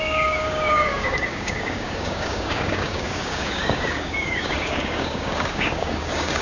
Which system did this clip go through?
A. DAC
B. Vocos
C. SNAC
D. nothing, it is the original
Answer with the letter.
A